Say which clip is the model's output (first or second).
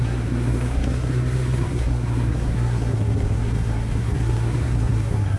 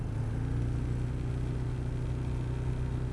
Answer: first